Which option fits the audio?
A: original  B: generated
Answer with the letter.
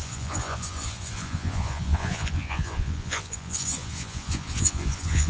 B